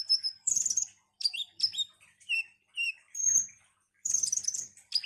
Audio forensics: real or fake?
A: fake